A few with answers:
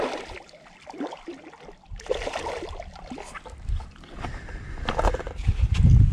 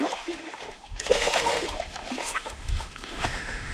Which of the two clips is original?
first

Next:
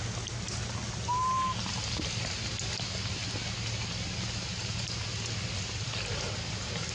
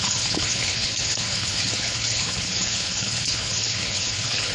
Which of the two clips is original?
first